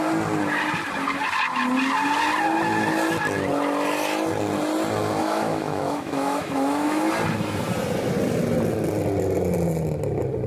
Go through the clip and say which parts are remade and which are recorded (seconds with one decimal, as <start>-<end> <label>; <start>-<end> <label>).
0.0-5.2 recorded; 5.2-7.1 remade; 7.1-10.5 recorded